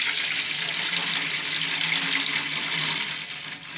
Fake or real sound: real